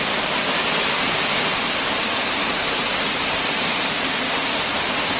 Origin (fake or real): real